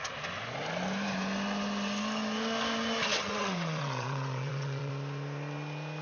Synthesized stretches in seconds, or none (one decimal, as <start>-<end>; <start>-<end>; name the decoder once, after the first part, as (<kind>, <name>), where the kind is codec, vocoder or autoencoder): 3.1-4.9 (vocoder, WaveNeXt)

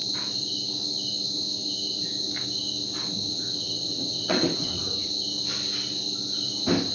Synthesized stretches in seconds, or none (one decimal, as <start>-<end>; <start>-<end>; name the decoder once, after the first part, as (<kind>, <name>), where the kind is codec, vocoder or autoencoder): 3.3-4.8 (vocoder, WaveNeXt)

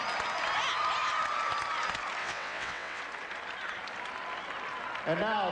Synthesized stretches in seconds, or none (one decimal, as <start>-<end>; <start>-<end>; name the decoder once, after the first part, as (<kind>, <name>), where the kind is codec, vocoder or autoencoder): 2.2-3.0 (vocoder, WaveNeXt)

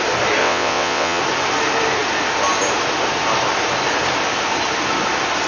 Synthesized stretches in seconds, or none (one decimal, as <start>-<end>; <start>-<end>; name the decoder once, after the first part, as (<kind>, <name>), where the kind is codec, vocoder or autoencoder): 0.4-1.2 (vocoder, WaveNeXt)

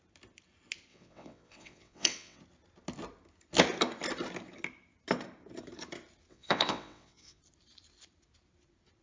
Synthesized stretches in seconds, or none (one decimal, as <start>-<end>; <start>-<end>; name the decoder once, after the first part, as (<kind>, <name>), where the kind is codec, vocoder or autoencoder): 0.9-2.4 (vocoder, WaveNeXt); 6.3-7.4

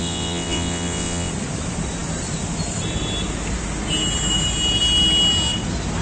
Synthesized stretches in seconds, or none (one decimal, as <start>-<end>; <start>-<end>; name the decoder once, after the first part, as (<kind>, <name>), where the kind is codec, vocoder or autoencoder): 0.0-1.3 (vocoder, WaveNeXt)

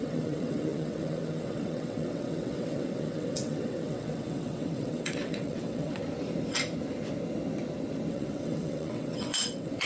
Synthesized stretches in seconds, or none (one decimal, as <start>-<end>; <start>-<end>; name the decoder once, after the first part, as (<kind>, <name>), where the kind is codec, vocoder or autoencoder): 0.0-6.0 (vocoder, WaveNeXt); 8.1-9.9

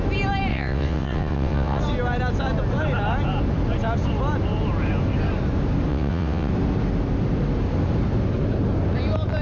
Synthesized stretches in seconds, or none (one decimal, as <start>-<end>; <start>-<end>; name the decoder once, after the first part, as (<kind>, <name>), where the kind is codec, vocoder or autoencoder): 0.5-1.8 (vocoder, WaveNeXt); 5.9-6.5